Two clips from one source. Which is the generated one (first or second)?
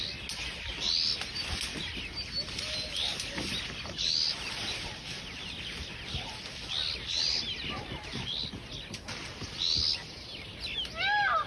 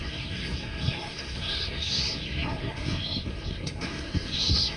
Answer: second